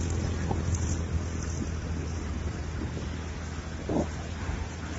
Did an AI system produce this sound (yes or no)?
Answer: no